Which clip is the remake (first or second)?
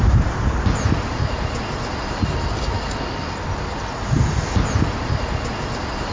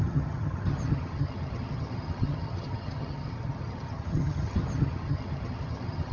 second